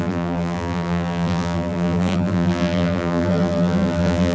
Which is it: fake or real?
fake